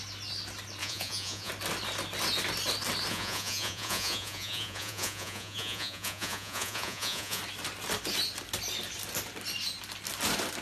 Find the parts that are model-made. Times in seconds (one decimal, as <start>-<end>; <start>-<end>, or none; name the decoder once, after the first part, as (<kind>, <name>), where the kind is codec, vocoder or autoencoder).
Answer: 0.8-1.5 (vocoder, Vocos); 3.1-7.4